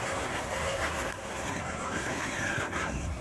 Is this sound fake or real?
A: fake